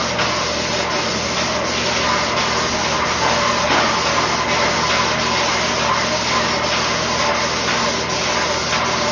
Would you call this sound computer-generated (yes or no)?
no